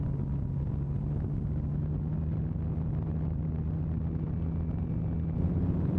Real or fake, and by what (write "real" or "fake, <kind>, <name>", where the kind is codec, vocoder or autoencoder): real